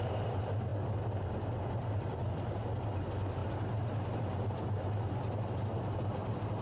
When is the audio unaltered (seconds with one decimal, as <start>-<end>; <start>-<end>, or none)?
0.0-0.7; 2.8-6.6